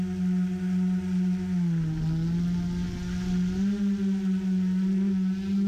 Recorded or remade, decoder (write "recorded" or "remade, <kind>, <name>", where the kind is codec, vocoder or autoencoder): recorded